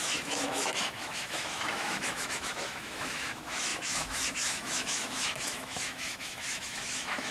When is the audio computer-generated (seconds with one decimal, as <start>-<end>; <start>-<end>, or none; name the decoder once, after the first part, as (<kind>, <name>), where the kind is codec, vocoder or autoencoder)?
0.0-7.3 (autoencoder, DAC-VAE)